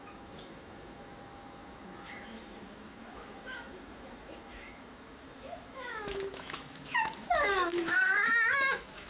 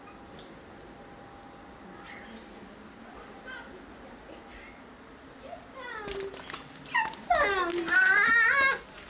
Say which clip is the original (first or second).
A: second